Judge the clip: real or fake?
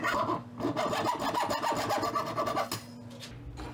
real